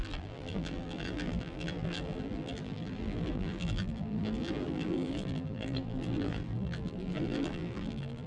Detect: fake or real fake